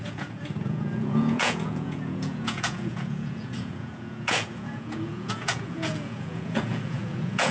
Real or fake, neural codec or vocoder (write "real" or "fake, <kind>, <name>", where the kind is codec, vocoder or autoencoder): fake, vocoder, Vocos